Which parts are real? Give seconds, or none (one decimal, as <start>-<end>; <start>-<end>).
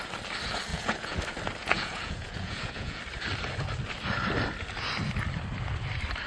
0.0-0.7; 1.2-1.6; 3.0-6.3